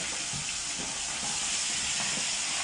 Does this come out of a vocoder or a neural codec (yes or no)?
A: no